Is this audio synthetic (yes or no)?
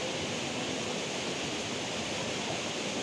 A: no